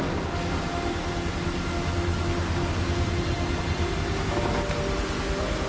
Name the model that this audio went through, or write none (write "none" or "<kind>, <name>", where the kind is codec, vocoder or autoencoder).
none